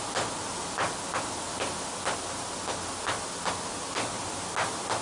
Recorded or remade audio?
recorded